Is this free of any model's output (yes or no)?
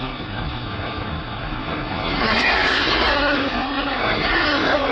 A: no